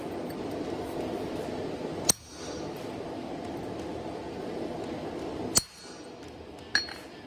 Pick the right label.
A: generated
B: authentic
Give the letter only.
B